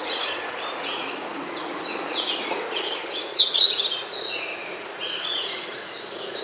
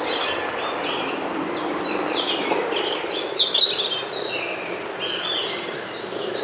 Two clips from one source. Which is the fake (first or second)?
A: first